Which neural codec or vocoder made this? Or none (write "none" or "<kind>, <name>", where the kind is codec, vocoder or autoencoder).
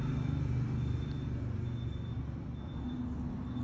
none